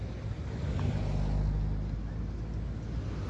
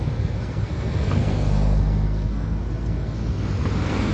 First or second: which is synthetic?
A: second